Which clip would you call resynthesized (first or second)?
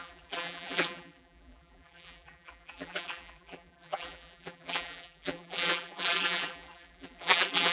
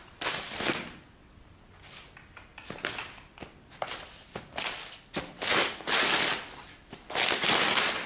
first